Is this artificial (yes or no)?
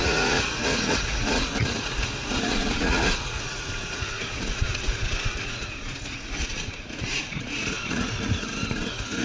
yes